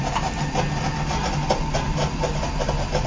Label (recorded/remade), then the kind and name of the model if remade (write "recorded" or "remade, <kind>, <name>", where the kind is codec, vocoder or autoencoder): recorded